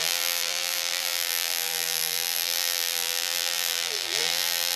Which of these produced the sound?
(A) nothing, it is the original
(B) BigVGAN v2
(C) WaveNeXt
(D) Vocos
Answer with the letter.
B